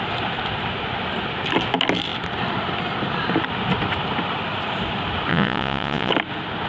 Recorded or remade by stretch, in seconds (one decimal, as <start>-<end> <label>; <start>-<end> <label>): 0.0-5.3 recorded; 5.3-6.1 remade; 6.1-6.7 recorded

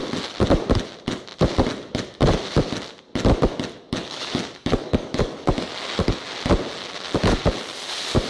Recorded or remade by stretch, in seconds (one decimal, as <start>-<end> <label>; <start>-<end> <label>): 0.0-4.0 recorded; 4.0-5.7 remade; 5.7-8.3 recorded